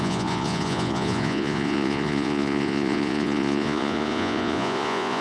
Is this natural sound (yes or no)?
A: no